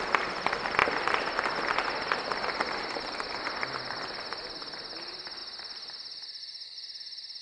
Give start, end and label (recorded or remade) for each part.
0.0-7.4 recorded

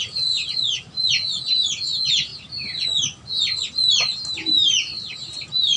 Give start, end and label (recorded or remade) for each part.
0.0-5.8 recorded

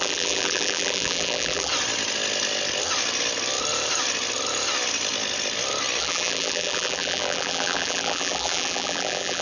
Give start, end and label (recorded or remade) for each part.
0.0-1.7 remade; 1.7-6.0 recorded; 6.0-9.4 remade

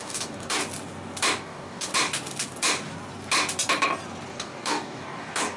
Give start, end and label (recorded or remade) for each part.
0.0-0.6 remade; 0.6-1.4 recorded; 1.4-1.9 remade; 1.9-4.3 recorded; 4.3-5.6 remade

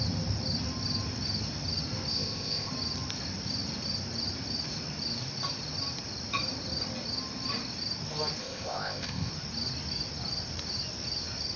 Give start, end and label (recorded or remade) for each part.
0.0-2.1 recorded; 2.1-2.7 remade; 2.7-8.4 recorded; 8.4-9.3 remade; 9.3-11.6 recorded

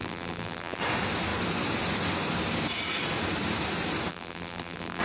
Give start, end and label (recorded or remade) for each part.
0.0-0.8 remade; 0.8-4.1 recorded; 4.1-5.0 remade

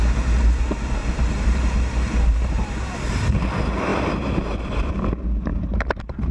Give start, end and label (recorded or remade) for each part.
0.0-1.0 recorded; 1.0-3.4 remade; 3.4-3.9 recorded; 3.9-4.9 remade; 4.9-5.5 recorded; 5.5-6.3 remade

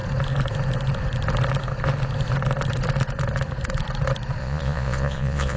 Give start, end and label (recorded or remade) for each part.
0.0-4.4 recorded; 4.4-5.6 remade